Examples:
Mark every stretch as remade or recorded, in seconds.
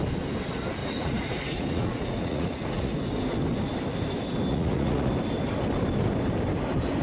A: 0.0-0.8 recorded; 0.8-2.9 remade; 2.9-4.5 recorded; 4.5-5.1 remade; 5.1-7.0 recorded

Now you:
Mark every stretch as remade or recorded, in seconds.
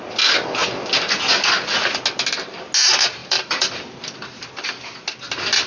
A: 0.0-3.2 recorded; 3.2-4.7 remade; 4.7-5.7 recorded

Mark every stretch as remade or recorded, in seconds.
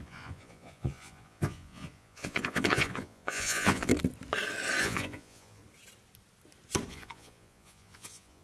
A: 0.0-3.9 remade; 3.9-4.8 recorded; 4.8-5.6 remade; 5.6-6.9 recorded; 6.9-8.4 remade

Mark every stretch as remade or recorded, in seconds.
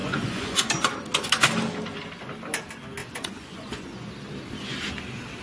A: 0.0-0.7 remade; 0.7-3.0 recorded; 3.0-4.1 remade; 4.1-5.4 recorded